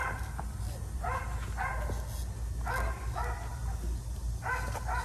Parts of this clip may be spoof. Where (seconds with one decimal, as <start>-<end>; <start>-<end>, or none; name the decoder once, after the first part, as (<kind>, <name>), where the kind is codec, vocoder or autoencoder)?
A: 0.0-1.2 (vocoder, BigVGAN v2)